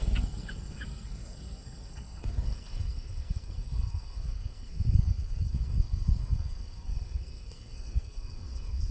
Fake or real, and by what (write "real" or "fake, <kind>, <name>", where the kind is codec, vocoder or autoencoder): fake, codec, SNAC